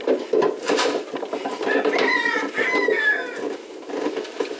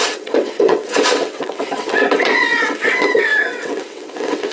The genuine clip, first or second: first